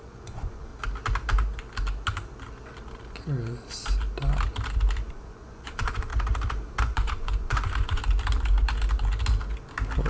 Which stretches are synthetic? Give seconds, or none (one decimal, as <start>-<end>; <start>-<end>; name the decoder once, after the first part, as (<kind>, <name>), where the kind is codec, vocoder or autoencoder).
0.0-0.7 (vocoder, Vocos); 5.1-6.1; 6.8-8.0